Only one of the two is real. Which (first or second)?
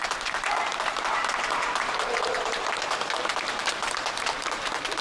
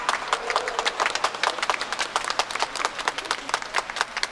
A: second